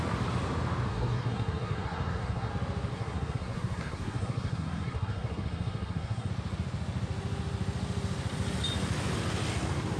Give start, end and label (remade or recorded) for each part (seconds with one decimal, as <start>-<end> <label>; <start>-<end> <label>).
0.0-0.9 recorded; 0.9-2.5 remade; 2.5-2.9 recorded; 2.9-6.3 remade; 6.3-10.0 recorded